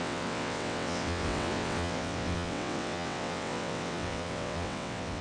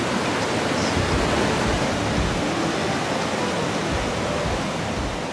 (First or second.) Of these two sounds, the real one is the second